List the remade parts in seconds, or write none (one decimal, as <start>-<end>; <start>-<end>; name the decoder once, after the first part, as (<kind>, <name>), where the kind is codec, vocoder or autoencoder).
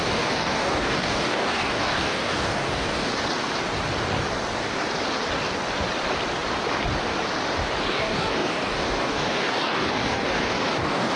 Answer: 0.0-3.1 (codec, DAC); 7.9-11.2